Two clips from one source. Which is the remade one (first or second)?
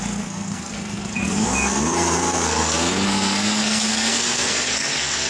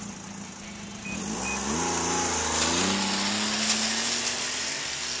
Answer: first